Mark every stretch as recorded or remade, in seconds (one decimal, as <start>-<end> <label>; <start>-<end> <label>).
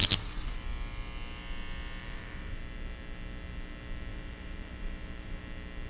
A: 0.0-2.0 recorded; 2.0-2.6 remade; 2.6-4.1 recorded; 4.1-5.4 remade; 5.4-5.9 recorded